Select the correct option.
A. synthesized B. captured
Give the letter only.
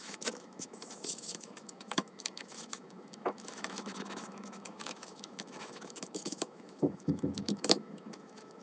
A